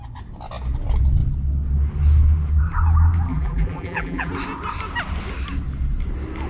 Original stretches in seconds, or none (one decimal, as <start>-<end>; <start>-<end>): 0.0-3.3; 4.3-6.5